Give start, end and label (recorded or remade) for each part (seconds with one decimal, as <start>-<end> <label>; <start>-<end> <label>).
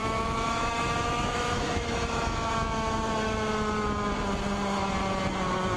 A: 0.0-3.5 remade; 3.5-5.8 recorded